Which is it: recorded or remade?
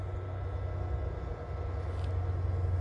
recorded